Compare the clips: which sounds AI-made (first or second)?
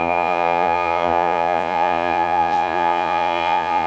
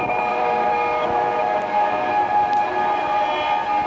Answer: first